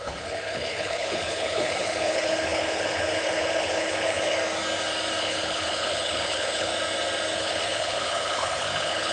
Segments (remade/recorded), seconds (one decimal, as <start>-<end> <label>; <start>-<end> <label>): 0.0-4.4 remade; 4.4-5.2 recorded; 5.2-6.7 remade; 6.7-7.4 recorded; 7.4-9.1 remade